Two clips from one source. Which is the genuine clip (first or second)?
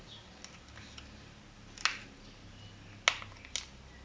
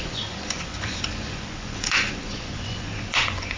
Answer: first